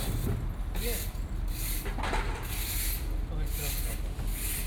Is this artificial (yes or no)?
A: no